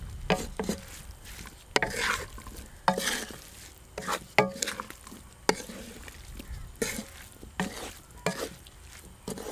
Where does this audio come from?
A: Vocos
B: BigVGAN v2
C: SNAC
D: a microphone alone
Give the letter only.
D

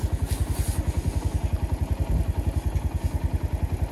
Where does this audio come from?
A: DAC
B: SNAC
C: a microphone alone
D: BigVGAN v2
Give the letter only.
C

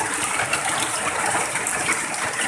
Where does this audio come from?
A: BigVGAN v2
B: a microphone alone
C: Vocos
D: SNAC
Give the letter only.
A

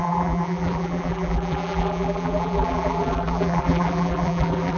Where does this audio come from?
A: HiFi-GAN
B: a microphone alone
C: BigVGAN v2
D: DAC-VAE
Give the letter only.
C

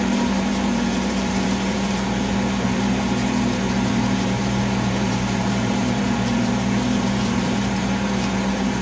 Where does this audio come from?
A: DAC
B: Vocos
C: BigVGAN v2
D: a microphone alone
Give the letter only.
C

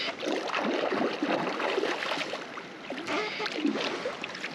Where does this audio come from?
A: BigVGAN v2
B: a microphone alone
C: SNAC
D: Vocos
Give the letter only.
B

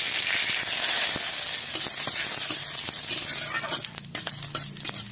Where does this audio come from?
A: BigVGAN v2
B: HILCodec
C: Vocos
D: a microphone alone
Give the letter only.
D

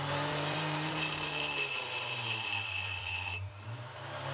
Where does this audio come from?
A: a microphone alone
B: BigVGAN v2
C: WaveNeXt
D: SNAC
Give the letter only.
B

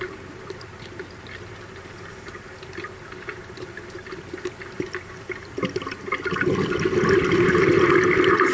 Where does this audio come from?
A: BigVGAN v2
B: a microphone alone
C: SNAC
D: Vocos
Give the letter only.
B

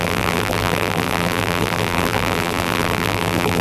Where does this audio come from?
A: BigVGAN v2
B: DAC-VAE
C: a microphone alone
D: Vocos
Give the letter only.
A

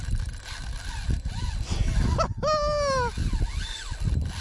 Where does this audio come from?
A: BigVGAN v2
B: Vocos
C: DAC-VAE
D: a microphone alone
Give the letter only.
D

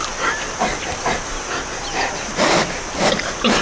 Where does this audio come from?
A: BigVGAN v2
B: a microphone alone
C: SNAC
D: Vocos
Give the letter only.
B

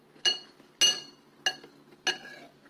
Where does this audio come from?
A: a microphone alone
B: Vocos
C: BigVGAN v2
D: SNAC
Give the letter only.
A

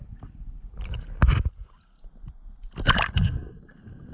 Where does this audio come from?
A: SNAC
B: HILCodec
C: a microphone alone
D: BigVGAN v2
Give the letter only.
C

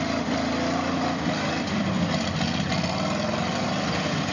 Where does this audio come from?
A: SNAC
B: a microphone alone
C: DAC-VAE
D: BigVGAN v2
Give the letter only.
B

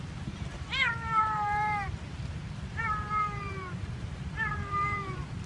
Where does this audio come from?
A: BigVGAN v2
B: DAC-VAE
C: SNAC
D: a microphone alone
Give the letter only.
A